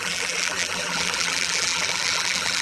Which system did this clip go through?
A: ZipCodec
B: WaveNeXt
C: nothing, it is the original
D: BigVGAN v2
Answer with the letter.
D